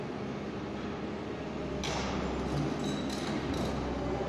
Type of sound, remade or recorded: recorded